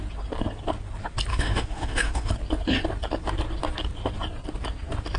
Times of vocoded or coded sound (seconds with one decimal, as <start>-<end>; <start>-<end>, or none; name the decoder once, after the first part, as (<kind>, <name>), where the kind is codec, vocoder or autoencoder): 1.3-2.3 (autoencoder, DAC-VAE)